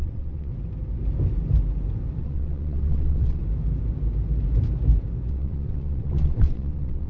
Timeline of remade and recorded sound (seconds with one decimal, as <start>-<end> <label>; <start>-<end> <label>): 0.0-0.5 remade; 0.5-2.2 recorded; 2.2-3.4 remade; 3.4-5.3 recorded; 5.3-7.1 remade